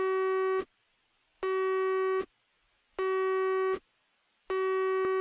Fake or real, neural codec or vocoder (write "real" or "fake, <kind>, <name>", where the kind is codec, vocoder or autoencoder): real